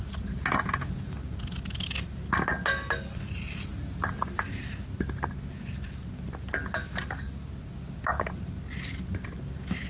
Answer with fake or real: real